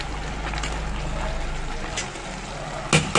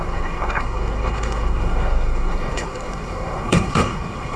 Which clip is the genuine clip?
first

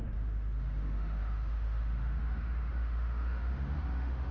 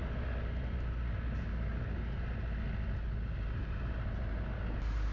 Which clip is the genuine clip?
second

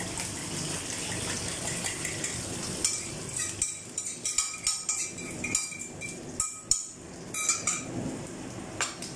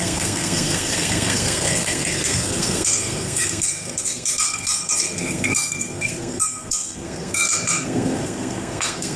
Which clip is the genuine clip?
first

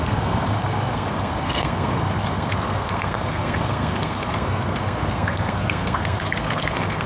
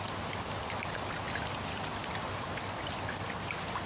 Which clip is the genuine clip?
second